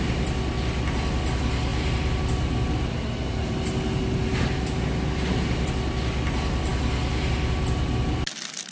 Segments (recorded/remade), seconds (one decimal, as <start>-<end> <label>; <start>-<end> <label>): 0.0-8.7 recorded